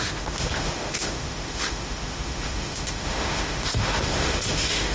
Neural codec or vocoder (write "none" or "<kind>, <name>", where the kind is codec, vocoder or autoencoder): autoencoder, DAC-VAE